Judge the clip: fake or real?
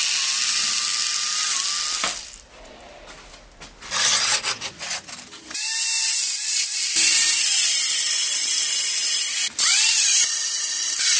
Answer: real